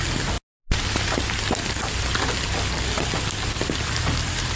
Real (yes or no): yes